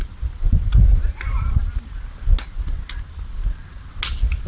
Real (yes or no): yes